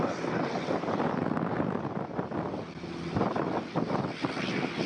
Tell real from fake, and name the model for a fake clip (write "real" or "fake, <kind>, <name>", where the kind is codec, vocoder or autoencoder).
real